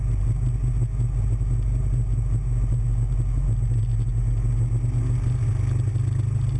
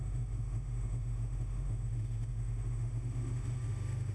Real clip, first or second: first